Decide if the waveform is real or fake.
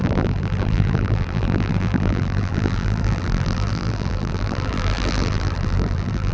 fake